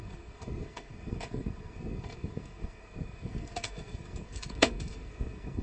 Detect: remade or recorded remade